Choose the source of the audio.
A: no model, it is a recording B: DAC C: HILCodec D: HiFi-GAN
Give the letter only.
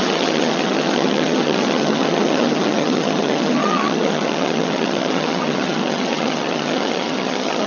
D